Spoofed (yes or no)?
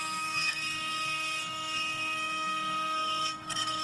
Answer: yes